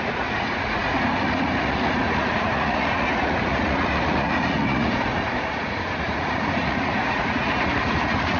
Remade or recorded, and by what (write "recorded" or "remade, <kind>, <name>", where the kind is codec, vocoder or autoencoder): remade, vocoder, Vocos